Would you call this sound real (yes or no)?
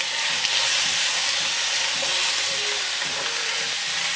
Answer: yes